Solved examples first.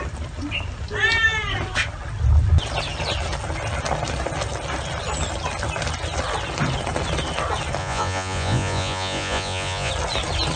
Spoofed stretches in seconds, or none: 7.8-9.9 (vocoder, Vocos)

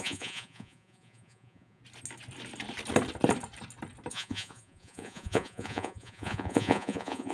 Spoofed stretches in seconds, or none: 0.0-1.8 (vocoder, Vocos); 4.1-7.3

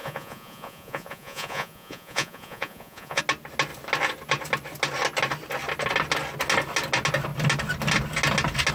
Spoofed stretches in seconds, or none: 0.0-3.2 (vocoder, Vocos)

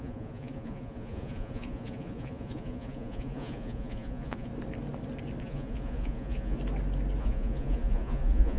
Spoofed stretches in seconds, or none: 0.0-4.5 (vocoder, Vocos); 5.4-6.6; 7.2-8.6